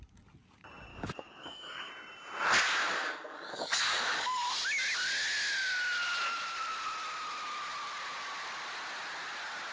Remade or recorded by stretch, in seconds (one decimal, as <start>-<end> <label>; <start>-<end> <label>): 0.0-0.9 recorded; 0.9-1.9 remade; 1.9-2.8 recorded; 2.8-4.5 remade; 4.5-9.7 recorded